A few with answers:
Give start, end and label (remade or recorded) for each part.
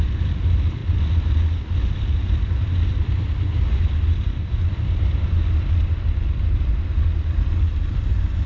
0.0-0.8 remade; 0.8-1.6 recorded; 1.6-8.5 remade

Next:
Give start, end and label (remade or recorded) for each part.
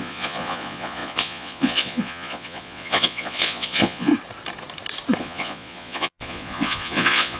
0.0-4.1 remade; 4.1-5.2 recorded; 5.2-7.4 remade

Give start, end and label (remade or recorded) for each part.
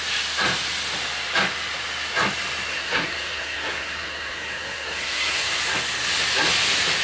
0.0-2.7 recorded; 2.7-5.6 remade; 5.6-7.0 recorded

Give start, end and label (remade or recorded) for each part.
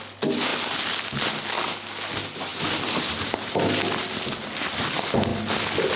0.0-6.0 recorded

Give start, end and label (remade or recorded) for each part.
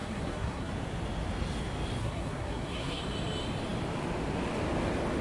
0.0-0.7 remade; 0.7-2.0 recorded; 2.0-3.0 remade; 3.0-5.2 recorded